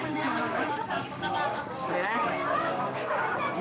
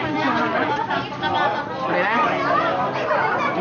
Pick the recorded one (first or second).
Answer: second